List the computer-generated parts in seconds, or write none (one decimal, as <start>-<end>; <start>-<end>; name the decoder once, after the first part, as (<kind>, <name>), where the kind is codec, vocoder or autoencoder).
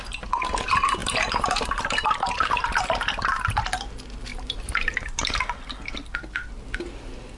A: 1.0-2.8 (vocoder, BigVGAN v2); 4.3-5.4